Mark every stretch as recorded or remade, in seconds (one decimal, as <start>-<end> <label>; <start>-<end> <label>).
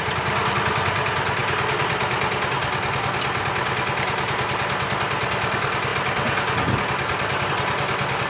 0.0-8.3 recorded